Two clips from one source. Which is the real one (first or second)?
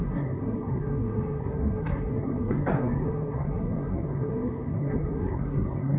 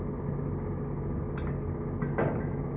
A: second